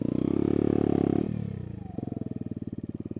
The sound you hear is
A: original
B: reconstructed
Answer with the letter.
A